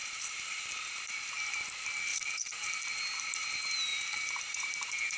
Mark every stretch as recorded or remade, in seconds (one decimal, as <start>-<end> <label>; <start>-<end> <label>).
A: 0.0-1.1 remade; 1.1-2.1 recorded; 2.1-2.8 remade; 2.8-3.9 recorded; 3.9-5.2 remade